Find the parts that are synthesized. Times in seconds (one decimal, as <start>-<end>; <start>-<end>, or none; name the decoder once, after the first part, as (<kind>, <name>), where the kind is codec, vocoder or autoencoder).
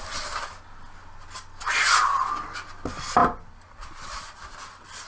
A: 3.2-5.1 (vocoder, BigVGAN v2)